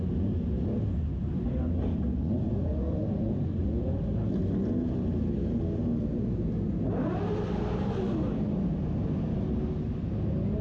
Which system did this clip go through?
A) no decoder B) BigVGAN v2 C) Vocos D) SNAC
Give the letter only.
A